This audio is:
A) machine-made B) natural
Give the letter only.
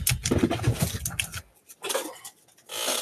B